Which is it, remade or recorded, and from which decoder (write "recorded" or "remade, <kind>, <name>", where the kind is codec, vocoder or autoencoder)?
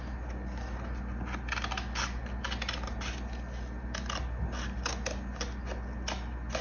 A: recorded